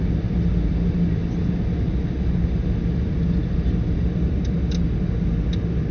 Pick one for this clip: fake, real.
real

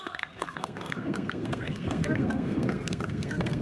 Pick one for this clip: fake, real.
fake